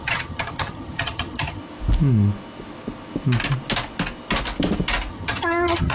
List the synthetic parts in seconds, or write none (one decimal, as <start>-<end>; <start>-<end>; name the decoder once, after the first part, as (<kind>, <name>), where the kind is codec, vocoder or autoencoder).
0.0-1.6 (vocoder, HiFi-GAN); 5.1-5.9

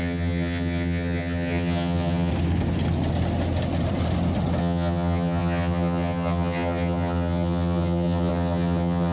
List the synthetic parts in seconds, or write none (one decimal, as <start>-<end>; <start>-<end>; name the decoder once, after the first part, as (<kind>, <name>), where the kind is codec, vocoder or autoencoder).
0.0-2.3 (vocoder, HiFi-GAN); 4.6-9.1

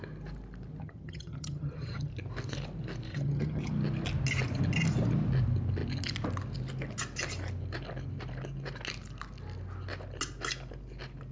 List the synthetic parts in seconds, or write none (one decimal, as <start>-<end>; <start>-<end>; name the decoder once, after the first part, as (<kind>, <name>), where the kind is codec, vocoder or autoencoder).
0.8-2.1 (vocoder, HiFi-GAN); 3.1-3.7

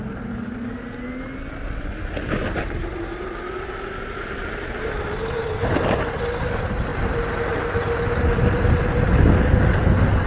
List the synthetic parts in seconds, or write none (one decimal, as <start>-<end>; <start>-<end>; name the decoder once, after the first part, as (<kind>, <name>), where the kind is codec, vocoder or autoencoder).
none

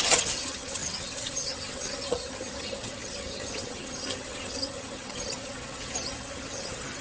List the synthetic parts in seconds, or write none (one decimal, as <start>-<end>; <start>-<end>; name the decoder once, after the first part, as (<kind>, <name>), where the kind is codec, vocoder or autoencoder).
0.0-7.0 (vocoder, HiFi-GAN)